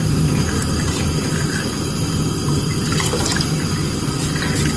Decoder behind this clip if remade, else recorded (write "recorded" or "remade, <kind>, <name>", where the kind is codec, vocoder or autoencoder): recorded